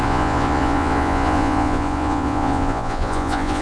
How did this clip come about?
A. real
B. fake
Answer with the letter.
B